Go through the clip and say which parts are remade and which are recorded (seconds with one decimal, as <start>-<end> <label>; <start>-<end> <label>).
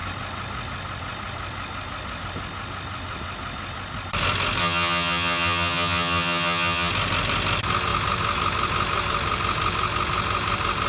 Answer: 0.0-4.6 recorded; 4.6-6.9 remade; 6.9-10.9 recorded